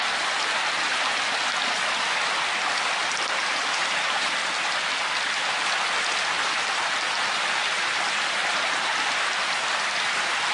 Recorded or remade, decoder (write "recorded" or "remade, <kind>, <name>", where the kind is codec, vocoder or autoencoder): recorded